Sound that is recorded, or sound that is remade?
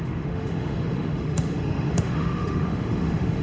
remade